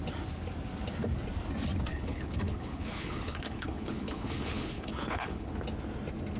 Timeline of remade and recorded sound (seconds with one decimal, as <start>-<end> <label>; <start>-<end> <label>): 0.0-1.9 recorded; 1.9-5.5 remade; 5.5-6.4 recorded